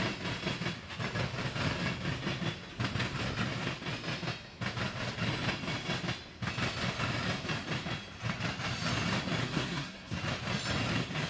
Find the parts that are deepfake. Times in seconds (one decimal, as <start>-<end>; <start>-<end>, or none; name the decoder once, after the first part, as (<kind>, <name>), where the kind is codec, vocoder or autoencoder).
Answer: 9.4-10.2 (codec, SNAC)